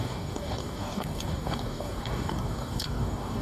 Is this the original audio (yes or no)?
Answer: no